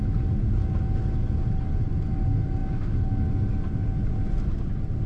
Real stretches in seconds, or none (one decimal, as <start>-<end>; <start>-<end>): 0.0-5.1